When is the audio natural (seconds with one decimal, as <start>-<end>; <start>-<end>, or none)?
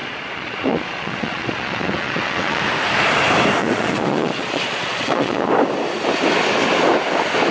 2.6-3.6; 5.5-7.5